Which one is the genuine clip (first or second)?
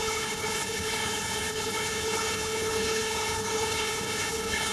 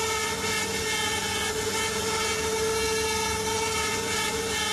second